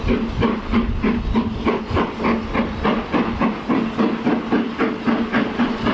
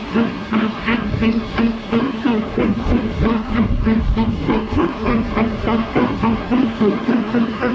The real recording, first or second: first